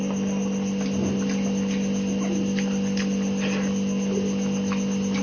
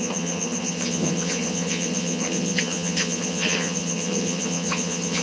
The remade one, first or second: second